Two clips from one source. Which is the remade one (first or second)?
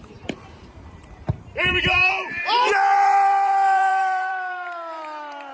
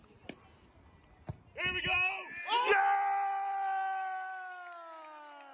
first